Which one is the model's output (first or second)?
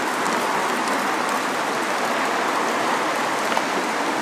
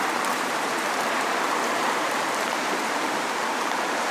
second